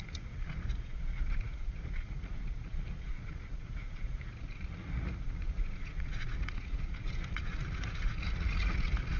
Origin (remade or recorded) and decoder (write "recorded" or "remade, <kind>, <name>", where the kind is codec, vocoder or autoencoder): remade, vocoder, Vocos